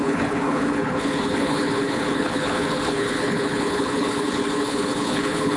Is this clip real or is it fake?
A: fake